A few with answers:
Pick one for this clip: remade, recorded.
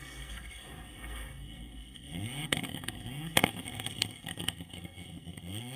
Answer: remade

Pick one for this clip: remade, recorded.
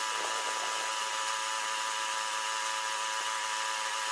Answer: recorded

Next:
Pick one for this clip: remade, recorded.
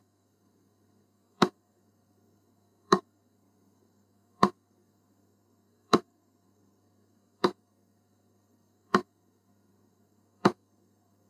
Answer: remade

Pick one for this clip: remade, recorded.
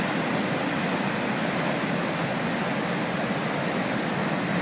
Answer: recorded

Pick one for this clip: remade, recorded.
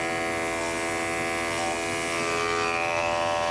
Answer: recorded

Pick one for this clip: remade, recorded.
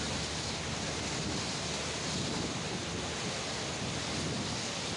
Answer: recorded